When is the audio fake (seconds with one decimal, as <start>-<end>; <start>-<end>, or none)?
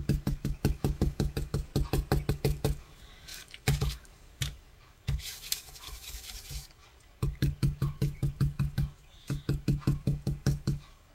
0.0-1.7; 2.3-11.1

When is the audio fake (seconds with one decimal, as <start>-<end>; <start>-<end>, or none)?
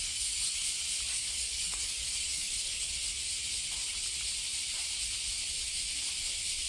0.0-0.6; 1.1-2.9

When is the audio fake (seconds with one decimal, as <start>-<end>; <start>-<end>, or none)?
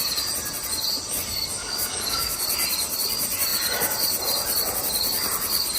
1.6-2.4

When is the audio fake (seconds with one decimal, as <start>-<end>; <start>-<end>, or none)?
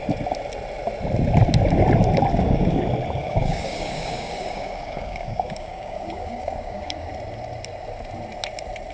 2.3-2.8; 3.2-7.1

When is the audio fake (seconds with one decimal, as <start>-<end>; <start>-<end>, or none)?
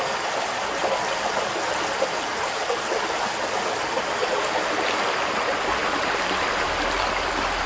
none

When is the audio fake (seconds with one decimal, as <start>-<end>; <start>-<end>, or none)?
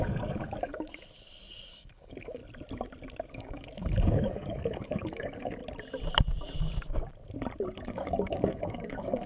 0.0-2.4; 3.3-5.6; 7.8-9.3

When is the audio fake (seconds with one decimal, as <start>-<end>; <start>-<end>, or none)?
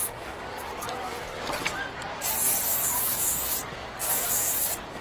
0.0-1.4; 2.7-5.0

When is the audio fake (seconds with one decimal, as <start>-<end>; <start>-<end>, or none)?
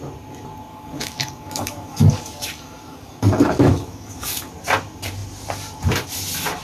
0.7-4.5